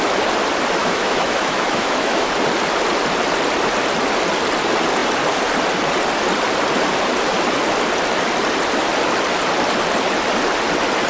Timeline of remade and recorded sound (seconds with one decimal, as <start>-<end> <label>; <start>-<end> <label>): 0.0-0.8 recorded; 0.8-2.3 remade; 2.3-11.1 recorded